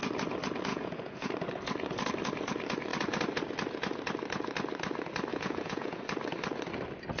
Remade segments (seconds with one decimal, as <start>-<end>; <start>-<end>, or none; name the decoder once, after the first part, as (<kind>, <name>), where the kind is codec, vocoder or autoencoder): 0.7-1.3 (vocoder, Vocos); 5.3-6.0